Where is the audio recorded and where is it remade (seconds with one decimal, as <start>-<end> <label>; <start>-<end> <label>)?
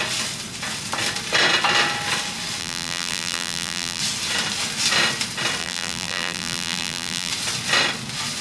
0.0-2.6 recorded; 2.6-4.0 remade; 4.0-5.6 recorded; 5.6-7.3 remade; 7.3-8.4 recorded